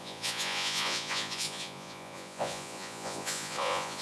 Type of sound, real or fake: fake